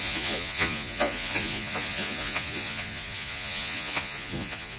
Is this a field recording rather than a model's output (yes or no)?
no